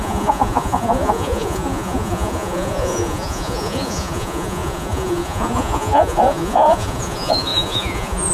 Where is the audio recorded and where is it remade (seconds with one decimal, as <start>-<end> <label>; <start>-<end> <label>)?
0.0-8.3 remade